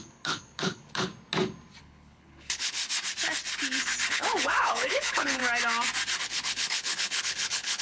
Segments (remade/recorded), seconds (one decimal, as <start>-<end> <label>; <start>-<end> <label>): 0.0-1.1 remade; 1.1-1.8 recorded; 1.8-2.8 remade; 2.8-4.1 recorded; 4.1-5.4 remade; 5.4-6.2 recorded; 6.2-7.8 remade